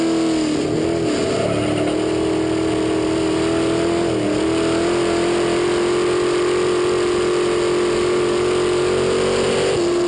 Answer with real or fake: real